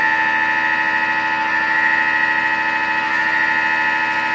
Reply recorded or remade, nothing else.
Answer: recorded